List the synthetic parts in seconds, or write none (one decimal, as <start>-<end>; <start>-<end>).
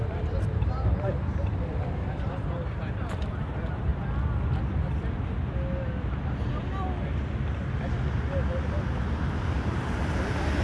0.0-3.9; 8.7-10.6